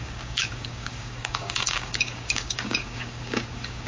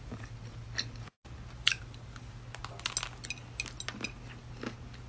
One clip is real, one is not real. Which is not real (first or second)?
first